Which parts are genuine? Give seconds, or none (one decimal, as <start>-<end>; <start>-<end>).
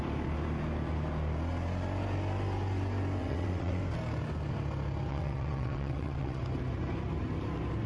0.0-3.2; 3.8-5.1; 6.4-7.9